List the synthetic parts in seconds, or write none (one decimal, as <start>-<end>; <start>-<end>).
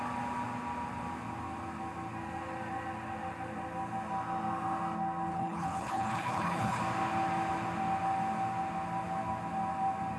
5.3-6.8